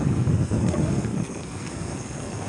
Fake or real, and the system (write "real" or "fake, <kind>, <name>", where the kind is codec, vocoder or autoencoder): fake, codec, SNAC